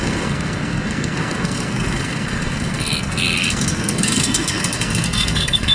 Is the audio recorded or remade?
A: remade